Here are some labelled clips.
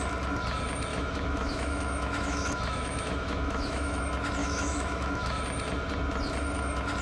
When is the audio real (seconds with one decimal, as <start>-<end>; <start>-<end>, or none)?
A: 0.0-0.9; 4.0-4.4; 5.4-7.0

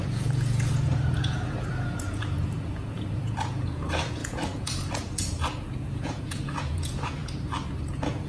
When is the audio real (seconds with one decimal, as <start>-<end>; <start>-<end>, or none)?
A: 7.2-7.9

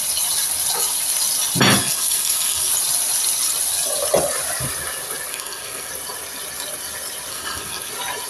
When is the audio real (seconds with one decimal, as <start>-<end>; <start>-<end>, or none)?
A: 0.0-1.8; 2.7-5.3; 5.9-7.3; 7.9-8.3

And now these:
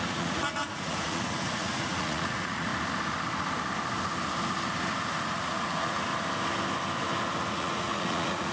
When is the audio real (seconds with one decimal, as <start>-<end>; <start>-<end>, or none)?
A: 2.7-5.2; 6.1-7.5

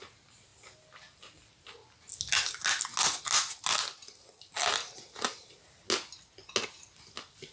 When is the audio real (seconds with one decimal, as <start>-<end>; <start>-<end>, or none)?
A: 0.0-4.8; 5.5-7.5

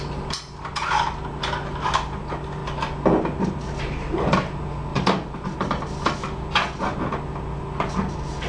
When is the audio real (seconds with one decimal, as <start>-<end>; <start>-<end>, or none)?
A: 0.0-4.9; 5.7-8.5

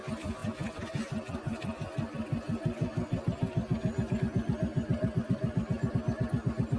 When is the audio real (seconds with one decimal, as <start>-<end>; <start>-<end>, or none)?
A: 0.0-6.8